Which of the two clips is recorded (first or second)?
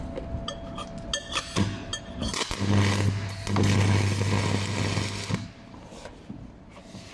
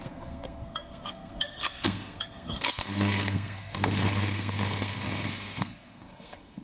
first